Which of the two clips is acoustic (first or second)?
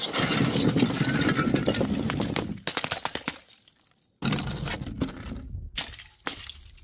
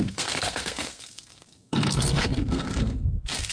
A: first